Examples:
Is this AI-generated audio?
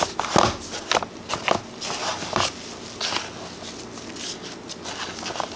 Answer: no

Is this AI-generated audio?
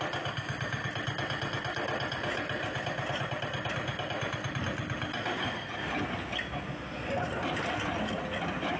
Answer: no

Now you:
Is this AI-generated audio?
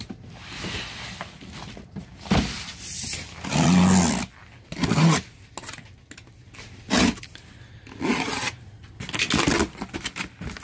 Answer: no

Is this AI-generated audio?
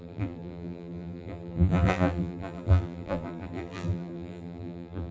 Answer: yes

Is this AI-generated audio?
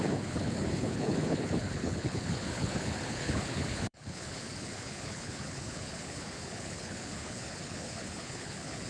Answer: yes